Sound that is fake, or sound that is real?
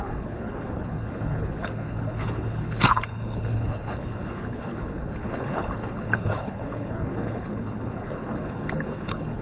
fake